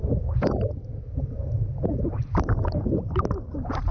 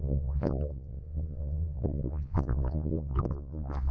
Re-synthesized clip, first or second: second